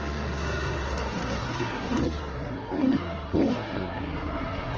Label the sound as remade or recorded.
remade